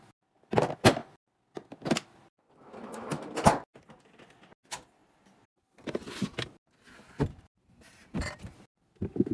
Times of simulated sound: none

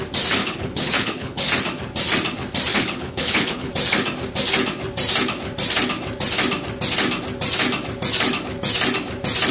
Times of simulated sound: 0.4-1.5 (codec, HILCodec); 2.7-3.7

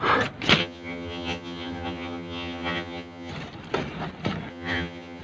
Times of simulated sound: 0.6-3.3 (vocoder, HiFi-GAN); 4.5-5.2

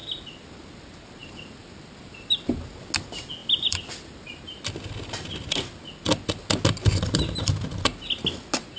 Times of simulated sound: 1.2-2.5 (vocoder, BigVGAN v2); 3.4-4.4